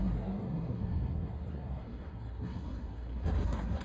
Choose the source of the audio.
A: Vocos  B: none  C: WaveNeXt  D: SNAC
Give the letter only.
D